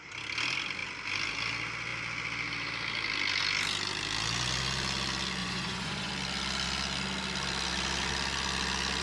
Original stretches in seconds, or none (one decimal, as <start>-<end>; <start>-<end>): 0.0-5.4; 6.1-9.0